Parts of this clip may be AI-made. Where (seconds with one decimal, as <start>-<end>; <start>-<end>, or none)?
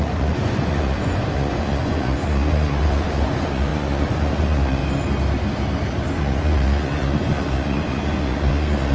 0.0-4.8; 6.1-8.9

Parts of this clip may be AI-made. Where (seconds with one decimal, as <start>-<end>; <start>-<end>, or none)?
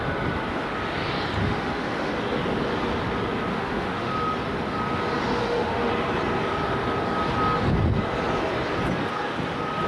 1.4-2.1; 3.5-4.1; 5.4-5.9